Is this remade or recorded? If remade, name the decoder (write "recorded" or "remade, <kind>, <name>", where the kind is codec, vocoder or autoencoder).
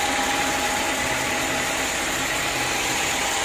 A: recorded